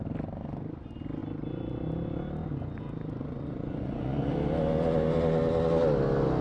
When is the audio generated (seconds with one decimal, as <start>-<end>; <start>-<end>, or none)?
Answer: 3.2-4.3